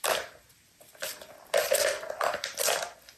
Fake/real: real